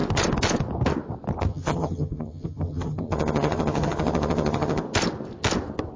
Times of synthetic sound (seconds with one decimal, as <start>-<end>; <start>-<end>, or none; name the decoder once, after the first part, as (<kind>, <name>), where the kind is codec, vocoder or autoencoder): 1.5-4.8 (vocoder, HiFi-GAN)